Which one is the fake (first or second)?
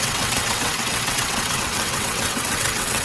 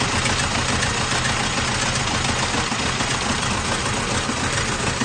first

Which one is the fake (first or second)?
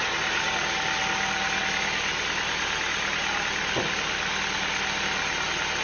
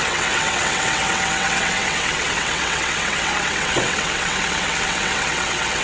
second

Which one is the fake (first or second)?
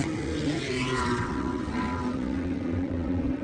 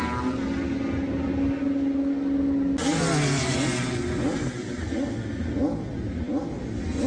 first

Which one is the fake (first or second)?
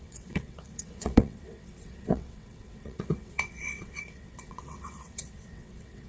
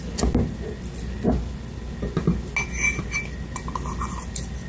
first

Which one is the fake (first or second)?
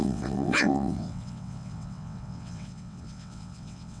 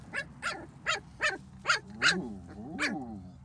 first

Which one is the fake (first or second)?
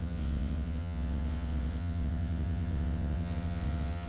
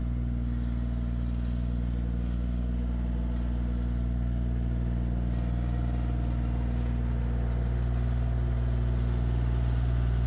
first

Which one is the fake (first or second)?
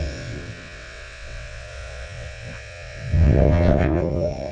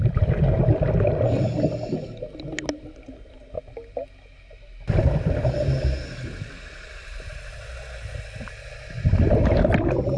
first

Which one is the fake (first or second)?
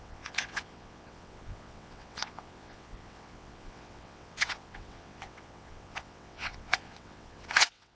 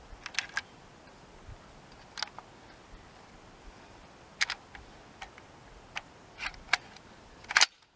first